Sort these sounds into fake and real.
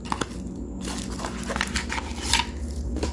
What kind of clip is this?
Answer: real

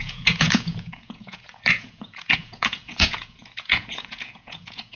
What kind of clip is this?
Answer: fake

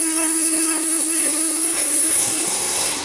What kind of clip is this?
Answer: fake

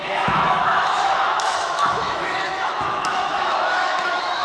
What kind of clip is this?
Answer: fake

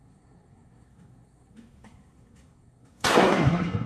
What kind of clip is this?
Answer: fake